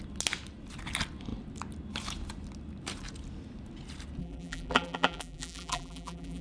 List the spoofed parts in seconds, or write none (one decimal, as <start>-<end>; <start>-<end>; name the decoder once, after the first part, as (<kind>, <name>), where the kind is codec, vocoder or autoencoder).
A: 4.2-6.4 (vocoder, BigVGAN v2)